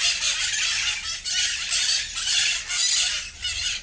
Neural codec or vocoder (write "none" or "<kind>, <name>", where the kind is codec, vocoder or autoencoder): none